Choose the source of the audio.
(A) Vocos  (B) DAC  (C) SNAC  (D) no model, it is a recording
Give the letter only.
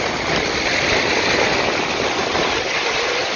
D